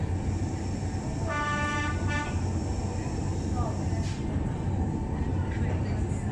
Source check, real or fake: real